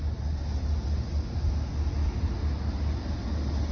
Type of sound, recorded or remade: recorded